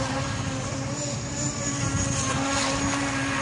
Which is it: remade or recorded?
recorded